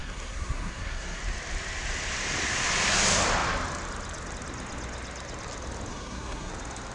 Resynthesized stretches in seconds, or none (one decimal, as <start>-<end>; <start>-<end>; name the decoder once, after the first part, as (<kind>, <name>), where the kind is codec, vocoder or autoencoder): 0.0-1.2 (codec, SNAC); 5.9-6.5